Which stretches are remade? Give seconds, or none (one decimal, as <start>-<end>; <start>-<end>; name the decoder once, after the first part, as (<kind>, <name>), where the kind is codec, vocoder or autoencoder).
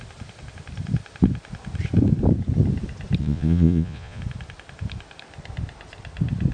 3.2-4.2 (vocoder, Vocos)